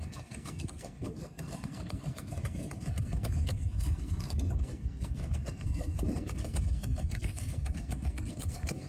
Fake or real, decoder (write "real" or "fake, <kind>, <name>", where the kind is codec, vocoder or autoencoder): fake, codec, SNAC